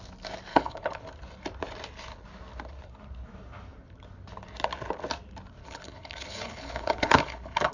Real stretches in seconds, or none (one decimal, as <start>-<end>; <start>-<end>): 0.0-0.5; 1.0-5.6